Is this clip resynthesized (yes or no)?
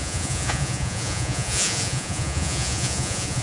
yes